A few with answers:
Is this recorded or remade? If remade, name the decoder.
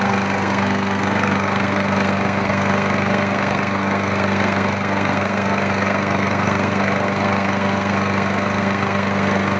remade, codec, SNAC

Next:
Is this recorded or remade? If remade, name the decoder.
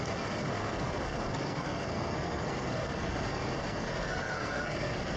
remade, codec, SNAC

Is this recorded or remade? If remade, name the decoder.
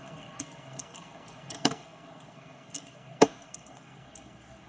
remade, codec, SNAC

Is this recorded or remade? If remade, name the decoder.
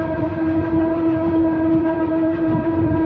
remade, vocoder, Vocos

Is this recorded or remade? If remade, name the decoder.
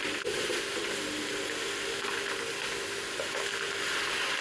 recorded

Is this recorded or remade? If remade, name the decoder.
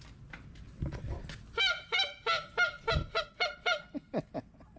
recorded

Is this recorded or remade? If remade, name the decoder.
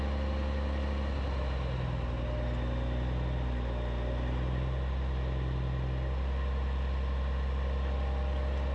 recorded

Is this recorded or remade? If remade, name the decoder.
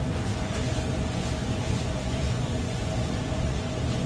remade, vocoder, Vocos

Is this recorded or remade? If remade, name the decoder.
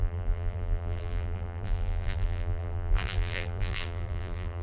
remade, vocoder, BigVGAN v2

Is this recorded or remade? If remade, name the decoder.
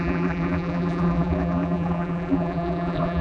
remade, vocoder, BigVGAN v2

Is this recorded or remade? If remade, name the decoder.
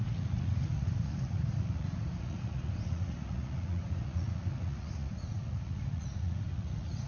remade, vocoder, Vocos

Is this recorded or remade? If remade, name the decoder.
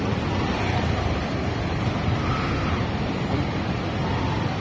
recorded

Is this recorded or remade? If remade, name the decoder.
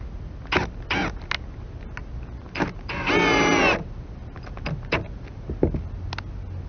recorded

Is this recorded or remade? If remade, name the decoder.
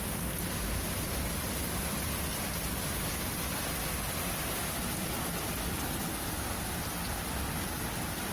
recorded